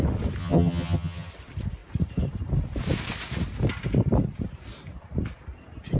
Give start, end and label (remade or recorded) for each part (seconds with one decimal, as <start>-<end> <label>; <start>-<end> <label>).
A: 0.0-0.4 recorded; 0.4-1.3 remade; 1.3-6.0 recorded